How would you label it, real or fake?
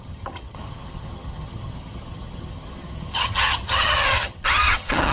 fake